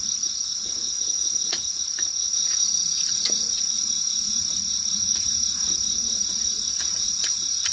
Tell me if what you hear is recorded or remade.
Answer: remade